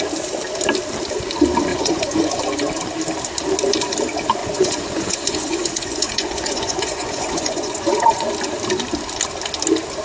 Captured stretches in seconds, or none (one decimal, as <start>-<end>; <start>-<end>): 0.0-1.7; 2.4-4.4; 8.3-10.0